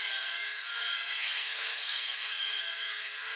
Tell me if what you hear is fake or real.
fake